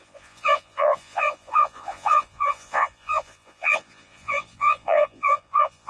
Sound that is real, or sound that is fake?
fake